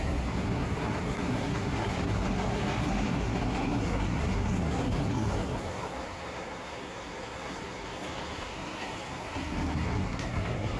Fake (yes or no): yes